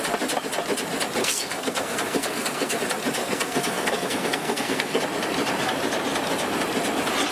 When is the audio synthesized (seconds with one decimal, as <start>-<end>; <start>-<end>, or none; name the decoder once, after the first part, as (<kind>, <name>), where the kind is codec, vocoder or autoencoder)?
1.2-2.8 (codec, SNAC); 3.2-5.0